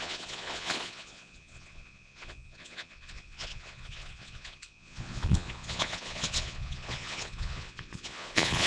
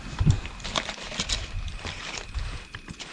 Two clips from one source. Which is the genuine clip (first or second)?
second